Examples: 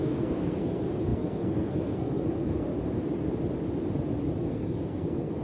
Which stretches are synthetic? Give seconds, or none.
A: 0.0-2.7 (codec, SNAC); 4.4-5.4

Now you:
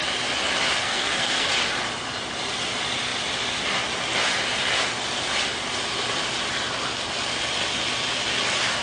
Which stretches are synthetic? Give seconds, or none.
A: 0.8-1.5 (codec, SNAC)